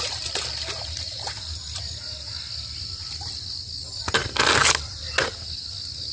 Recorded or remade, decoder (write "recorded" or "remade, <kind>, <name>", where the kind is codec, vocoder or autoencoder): recorded